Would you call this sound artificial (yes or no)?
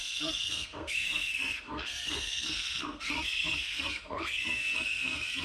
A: yes